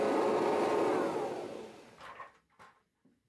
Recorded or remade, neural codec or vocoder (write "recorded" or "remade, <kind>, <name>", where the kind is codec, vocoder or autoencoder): recorded